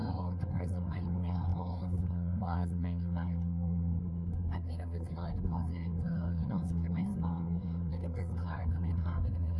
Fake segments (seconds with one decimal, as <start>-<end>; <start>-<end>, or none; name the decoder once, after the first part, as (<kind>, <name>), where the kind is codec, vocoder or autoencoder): 0.0-9.6 (codec, SNAC)